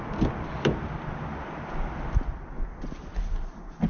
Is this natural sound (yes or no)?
yes